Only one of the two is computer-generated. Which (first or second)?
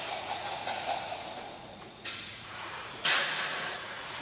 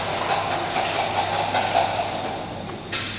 first